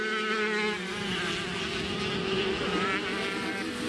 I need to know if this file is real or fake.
real